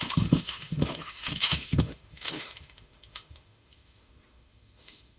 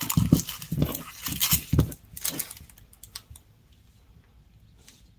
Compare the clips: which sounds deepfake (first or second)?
first